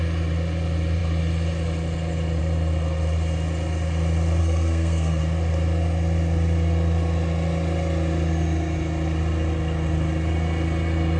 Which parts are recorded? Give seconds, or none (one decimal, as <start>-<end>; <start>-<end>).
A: 0.0-4.4; 5.2-11.2